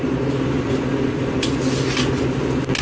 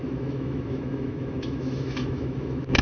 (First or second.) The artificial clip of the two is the second